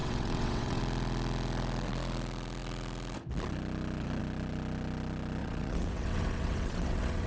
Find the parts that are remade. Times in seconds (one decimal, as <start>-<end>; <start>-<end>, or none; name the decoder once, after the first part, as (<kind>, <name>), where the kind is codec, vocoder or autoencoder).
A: 0.0-0.8 (vocoder, WaveNeXt); 5.4-7.3